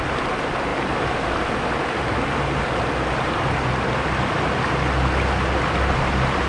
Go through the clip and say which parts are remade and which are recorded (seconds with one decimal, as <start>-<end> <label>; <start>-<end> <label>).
0.0-6.5 recorded